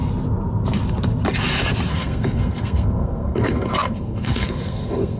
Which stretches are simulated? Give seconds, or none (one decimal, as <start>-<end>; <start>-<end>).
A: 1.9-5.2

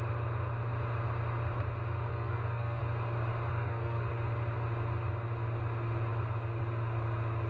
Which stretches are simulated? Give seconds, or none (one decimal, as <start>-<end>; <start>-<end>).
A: 2.1-2.8; 3.5-4.1

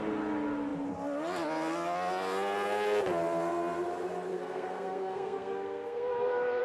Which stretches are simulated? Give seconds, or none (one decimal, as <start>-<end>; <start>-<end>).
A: 4.3-6.6

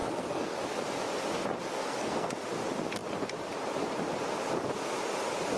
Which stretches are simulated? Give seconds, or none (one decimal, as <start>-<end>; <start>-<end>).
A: 0.0-0.6; 1.8-2.3